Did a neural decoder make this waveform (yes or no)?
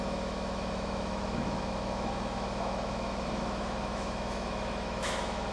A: yes